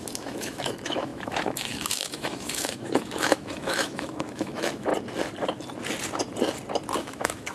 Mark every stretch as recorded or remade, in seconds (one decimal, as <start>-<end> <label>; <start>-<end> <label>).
0.0-4.9 remade; 4.9-7.0 recorded; 7.0-7.5 remade